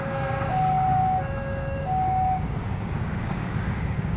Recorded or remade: remade